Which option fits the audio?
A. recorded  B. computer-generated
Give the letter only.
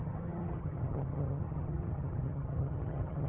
B